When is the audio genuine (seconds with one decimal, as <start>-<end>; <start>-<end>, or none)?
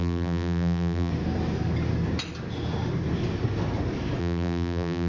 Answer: 1.1-4.2